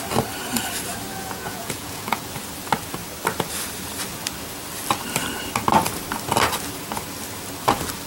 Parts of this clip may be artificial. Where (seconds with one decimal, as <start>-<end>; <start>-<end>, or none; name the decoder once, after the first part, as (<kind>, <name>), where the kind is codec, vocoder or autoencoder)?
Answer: 1.1-2.3 (vocoder, Vocos)